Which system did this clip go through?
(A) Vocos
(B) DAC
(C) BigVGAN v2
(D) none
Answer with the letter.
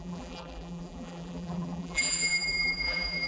C